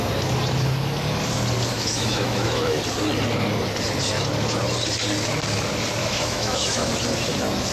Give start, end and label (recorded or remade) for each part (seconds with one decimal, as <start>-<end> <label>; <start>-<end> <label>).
0.0-1.7 recorded; 1.7-2.8 remade; 2.8-6.0 recorded; 6.0-6.9 remade; 6.9-7.7 recorded